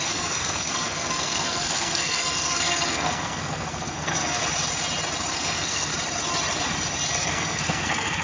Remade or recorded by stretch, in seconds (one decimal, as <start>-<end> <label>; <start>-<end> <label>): 0.0-4.4 remade; 4.4-5.3 recorded; 5.3-5.9 remade; 5.9-7.1 recorded; 7.1-8.2 remade